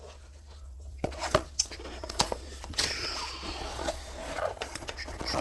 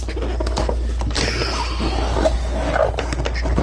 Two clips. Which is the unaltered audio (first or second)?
second